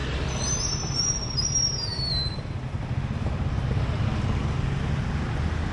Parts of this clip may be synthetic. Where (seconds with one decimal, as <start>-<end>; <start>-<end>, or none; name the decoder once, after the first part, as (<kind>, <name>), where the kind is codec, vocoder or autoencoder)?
none